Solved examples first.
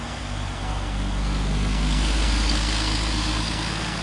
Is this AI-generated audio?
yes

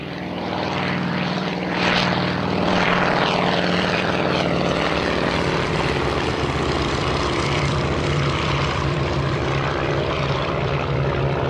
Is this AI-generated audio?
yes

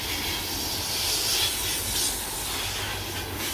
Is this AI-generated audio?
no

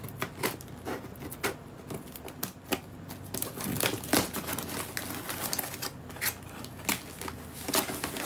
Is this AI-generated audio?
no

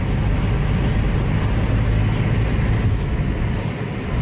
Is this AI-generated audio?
no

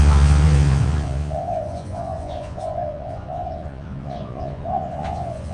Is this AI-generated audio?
yes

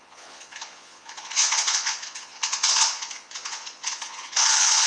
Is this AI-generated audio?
yes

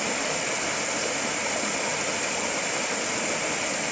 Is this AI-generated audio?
no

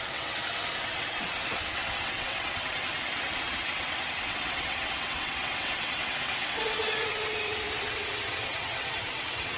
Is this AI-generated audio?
yes